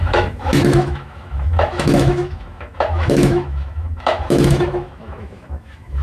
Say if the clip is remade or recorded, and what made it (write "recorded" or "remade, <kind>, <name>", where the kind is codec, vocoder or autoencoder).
remade, autoencoder, DAC-VAE